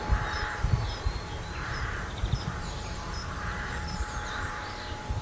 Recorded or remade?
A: remade